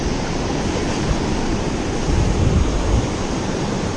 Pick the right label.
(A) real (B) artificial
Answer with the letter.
A